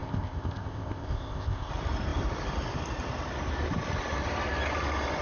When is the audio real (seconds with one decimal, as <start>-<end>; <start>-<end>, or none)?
1.7-5.2